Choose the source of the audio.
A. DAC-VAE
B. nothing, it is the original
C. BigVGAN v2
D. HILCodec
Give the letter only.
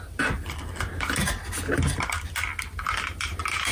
B